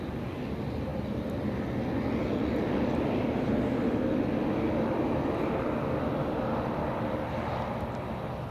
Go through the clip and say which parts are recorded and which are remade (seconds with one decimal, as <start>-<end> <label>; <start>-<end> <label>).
0.0-8.5 recorded